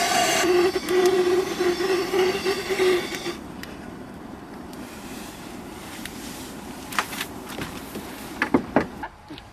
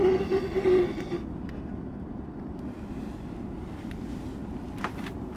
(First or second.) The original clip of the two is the second